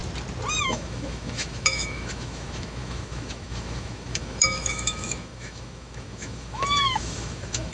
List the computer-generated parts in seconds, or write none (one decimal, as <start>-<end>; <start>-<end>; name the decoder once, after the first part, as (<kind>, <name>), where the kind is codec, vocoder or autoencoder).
0.6-7.7 (autoencoder, DAC-VAE)